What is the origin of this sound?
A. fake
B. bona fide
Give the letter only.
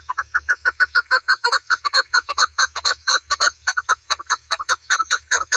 A